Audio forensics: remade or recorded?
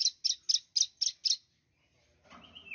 recorded